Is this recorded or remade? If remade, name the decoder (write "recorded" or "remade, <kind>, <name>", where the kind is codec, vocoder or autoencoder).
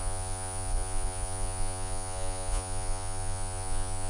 remade, vocoder, Vocos